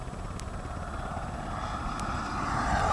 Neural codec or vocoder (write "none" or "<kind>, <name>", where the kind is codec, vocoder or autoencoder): none